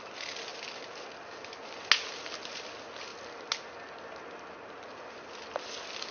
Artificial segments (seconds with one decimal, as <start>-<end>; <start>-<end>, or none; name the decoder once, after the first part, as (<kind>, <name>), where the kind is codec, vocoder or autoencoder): none